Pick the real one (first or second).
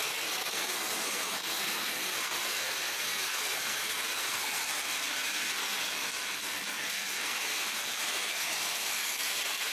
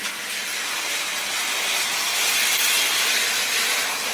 second